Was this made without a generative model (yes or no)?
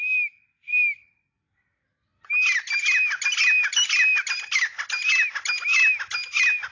yes